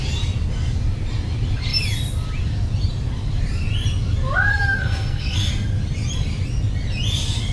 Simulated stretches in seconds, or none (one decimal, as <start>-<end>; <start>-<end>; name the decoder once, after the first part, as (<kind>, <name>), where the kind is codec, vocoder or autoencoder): 4.5-5.5 (codec, SNAC)